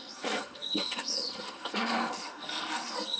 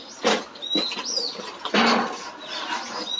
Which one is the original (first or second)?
second